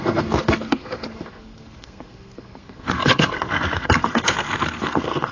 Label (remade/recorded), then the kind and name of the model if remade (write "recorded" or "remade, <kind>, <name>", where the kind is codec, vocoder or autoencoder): remade, codec, SNAC